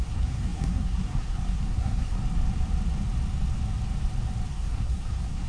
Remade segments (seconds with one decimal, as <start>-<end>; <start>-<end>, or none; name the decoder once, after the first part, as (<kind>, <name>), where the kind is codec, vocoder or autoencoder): 0.0-2.2 (codec, SNAC); 4.5-5.5